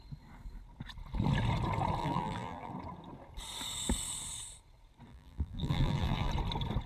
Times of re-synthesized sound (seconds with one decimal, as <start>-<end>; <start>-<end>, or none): 2.0-2.7; 5.1-6.3